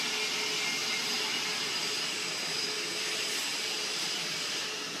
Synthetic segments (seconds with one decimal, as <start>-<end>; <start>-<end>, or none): 0.8-2.9; 3.4-5.0